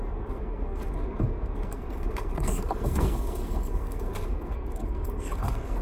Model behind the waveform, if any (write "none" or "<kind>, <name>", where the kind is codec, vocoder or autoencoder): codec, SNAC